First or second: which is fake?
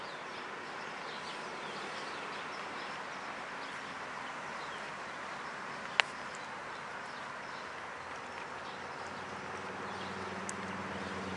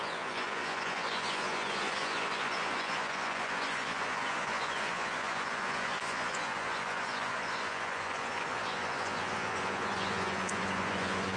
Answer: second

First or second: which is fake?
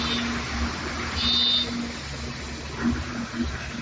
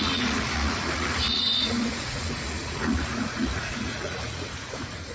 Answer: second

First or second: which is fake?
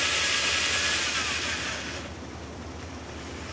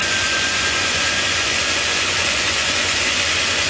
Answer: second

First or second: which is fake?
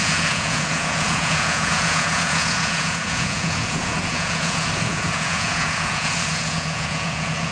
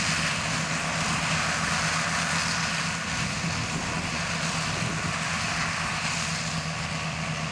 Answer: first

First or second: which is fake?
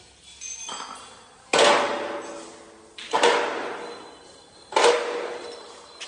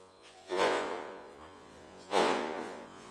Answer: second